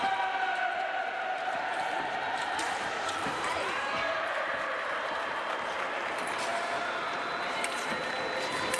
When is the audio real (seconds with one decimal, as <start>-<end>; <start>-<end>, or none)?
0.0-1.7; 5.1-6.5; 8.1-8.8